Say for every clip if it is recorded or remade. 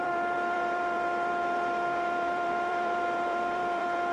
remade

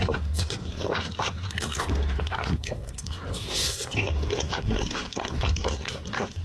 remade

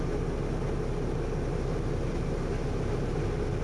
recorded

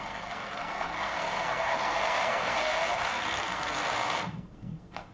remade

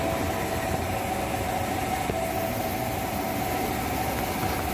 recorded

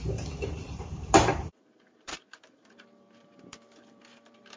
remade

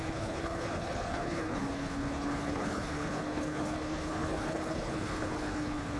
remade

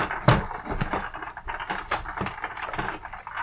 recorded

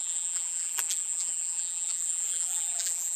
remade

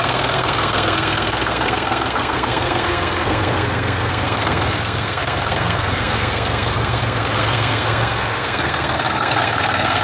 remade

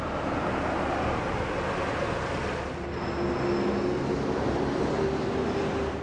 recorded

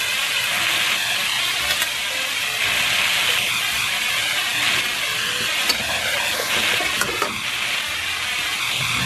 recorded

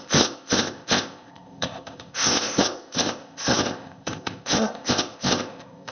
remade